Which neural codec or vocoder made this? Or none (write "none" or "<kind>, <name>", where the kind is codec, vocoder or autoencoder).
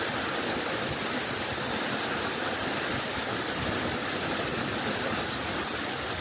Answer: none